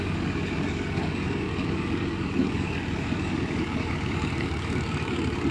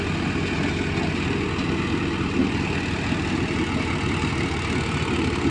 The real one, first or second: second